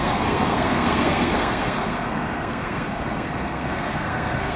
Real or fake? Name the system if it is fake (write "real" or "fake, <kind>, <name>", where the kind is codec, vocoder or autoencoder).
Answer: fake, codec, SNAC